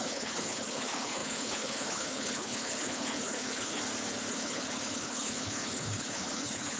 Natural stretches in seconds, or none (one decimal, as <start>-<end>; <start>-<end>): 3.8-4.3